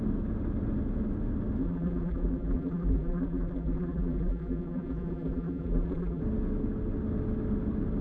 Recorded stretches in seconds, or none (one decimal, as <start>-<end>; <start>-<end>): 0.0-1.6; 6.2-8.0